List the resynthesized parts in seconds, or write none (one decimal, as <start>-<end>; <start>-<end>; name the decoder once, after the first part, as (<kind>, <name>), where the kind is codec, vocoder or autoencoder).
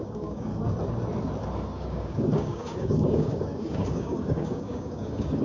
0.0-0.5 (codec, DAC); 1.8-5.4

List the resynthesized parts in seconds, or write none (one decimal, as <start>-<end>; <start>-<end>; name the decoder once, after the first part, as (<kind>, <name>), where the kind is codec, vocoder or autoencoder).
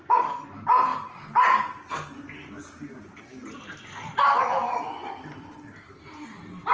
none